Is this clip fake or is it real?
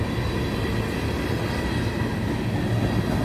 real